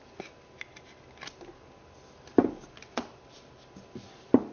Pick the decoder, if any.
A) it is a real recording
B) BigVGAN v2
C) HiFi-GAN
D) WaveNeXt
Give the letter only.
A